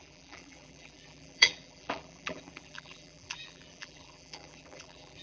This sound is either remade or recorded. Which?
remade